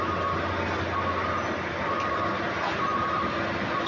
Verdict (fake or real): real